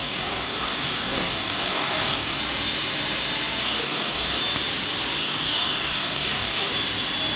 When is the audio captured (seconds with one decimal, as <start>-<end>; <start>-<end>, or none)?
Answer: 2.4-3.6; 4.4-5.2; 6.7-7.4